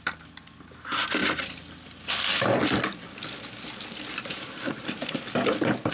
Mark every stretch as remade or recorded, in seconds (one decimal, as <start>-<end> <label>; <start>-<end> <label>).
0.0-5.9 recorded